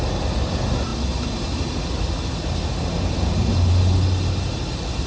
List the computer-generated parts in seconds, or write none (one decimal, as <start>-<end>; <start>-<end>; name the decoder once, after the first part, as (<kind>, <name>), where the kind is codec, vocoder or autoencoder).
none

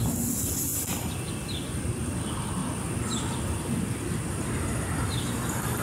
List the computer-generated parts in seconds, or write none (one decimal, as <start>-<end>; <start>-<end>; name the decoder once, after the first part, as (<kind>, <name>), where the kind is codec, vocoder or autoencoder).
none

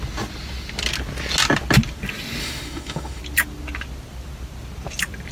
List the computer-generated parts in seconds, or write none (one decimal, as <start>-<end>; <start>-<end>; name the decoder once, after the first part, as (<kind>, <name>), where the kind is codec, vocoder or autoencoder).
2.4-3.2 (autoencoder, DAC-VAE)

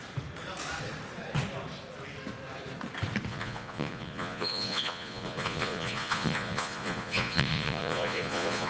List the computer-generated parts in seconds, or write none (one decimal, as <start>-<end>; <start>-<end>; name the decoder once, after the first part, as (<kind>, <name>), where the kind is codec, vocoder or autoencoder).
3.3-8.7 (vocoder, Vocos)

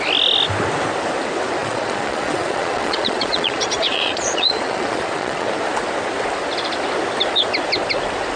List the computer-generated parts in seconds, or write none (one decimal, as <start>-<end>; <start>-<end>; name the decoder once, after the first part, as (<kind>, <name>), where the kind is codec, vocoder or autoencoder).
1.6-5.5 (vocoder, Vocos)

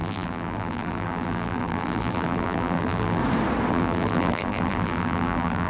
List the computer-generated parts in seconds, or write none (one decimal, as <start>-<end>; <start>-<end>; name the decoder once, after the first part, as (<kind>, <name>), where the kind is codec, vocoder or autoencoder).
0.0-3.2 (vocoder, BigVGAN v2); 3.7-5.7